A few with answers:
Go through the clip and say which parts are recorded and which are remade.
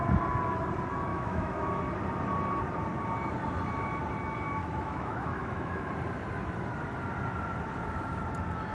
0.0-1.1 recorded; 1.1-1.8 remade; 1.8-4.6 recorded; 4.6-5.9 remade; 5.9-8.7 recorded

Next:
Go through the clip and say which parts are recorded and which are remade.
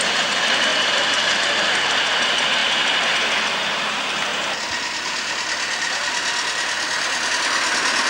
0.0-8.1 recorded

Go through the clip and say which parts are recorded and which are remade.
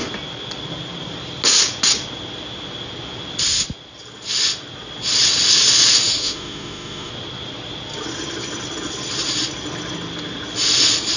0.0-6.2 recorded; 6.2-7.1 remade; 7.1-11.2 recorded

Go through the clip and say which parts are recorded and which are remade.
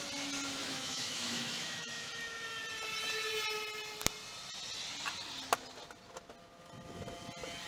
0.0-0.6 recorded; 0.6-2.1 remade; 2.1-7.7 recorded